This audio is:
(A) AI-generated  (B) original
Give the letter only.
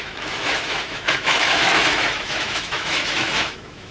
A